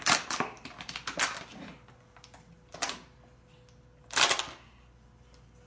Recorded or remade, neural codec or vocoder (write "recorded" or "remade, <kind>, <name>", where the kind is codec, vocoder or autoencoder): recorded